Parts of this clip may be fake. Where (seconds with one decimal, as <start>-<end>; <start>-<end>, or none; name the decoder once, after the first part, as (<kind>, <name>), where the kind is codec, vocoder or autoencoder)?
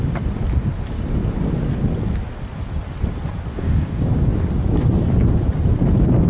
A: 3.5-4.0 (codec, DAC)